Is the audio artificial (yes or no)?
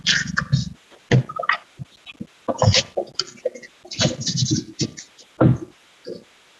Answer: no